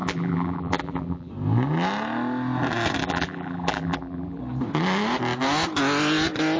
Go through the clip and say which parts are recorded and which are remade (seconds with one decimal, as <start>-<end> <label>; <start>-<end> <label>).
0.0-1.3 remade; 1.3-3.0 recorded; 3.0-4.4 remade; 4.4-6.6 recorded